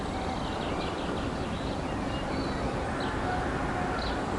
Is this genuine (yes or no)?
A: yes